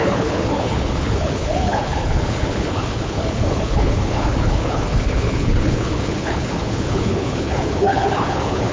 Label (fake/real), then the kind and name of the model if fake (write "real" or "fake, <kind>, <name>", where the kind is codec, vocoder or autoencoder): fake, codec, HILCodec